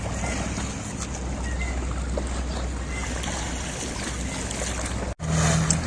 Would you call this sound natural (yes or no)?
yes